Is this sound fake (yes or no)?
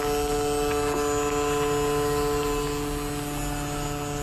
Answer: no